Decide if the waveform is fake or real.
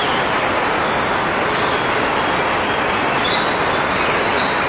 real